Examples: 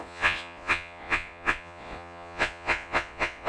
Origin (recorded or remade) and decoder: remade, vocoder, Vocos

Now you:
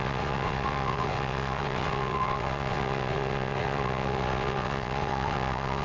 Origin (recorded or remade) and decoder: remade, vocoder, WaveNeXt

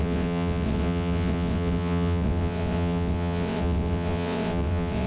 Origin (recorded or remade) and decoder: remade, vocoder, WaveNeXt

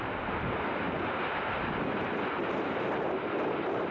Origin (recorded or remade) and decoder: recorded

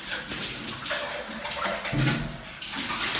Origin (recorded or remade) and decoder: recorded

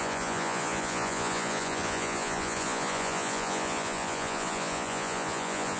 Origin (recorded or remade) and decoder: remade, vocoder, Vocos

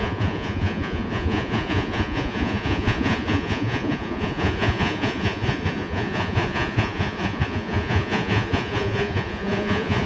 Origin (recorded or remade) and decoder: remade, vocoder, Vocos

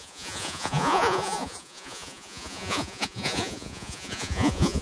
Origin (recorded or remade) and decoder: remade, vocoder, Vocos